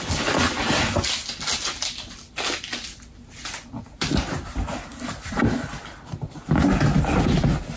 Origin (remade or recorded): recorded